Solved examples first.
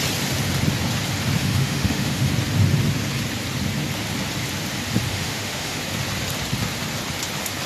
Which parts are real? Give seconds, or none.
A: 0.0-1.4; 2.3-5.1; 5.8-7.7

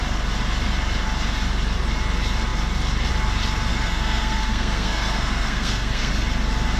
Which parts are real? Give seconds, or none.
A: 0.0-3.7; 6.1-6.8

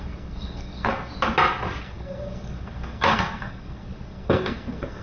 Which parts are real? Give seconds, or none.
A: 1.1-1.8

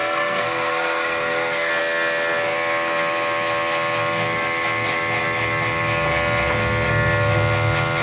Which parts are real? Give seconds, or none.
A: 1.7-8.0